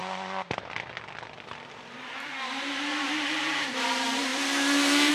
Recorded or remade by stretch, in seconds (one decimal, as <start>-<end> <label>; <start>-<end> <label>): 0.0-1.7 recorded; 1.7-5.1 remade